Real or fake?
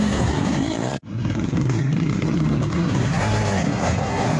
fake